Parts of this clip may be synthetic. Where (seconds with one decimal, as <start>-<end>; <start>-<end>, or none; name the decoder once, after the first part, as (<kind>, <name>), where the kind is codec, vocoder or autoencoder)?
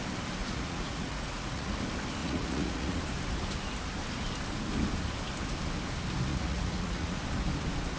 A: 0.4-1.7 (vocoder, Vocos); 2.2-3.0; 6.3-7.2